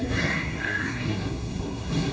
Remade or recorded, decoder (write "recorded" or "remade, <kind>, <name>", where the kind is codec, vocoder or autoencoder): remade, codec, SNAC